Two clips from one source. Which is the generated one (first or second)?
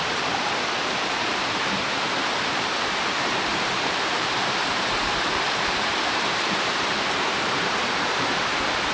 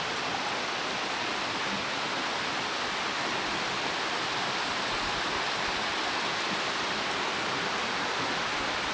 first